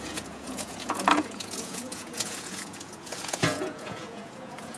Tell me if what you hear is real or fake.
fake